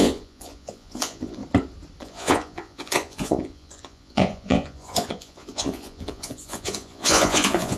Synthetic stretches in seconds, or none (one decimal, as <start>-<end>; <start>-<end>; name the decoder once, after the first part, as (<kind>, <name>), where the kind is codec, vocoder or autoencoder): 0.0-1.4 (vocoder, Vocos); 2.0-7.8